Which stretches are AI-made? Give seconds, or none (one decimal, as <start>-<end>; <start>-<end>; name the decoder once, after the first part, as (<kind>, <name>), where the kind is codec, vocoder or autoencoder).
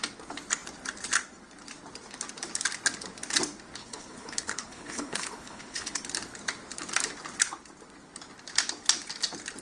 3.8-6.0 (codec, HILCodec)